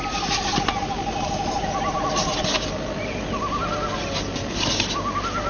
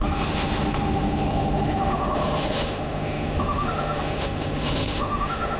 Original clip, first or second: first